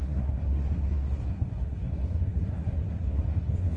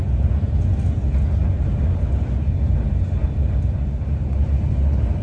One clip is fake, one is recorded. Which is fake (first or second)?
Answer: first